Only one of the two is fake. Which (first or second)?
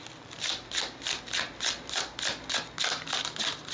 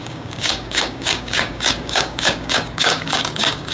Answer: second